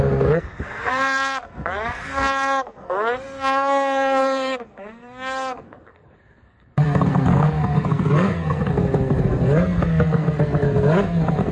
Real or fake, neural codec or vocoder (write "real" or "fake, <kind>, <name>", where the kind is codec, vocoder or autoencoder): fake, codec, SNAC